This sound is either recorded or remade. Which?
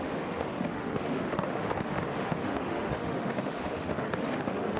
remade